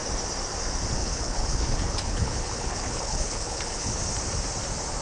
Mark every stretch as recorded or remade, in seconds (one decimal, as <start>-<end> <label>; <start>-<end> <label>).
0.0-1.0 recorded; 1.0-4.0 remade; 4.0-5.0 recorded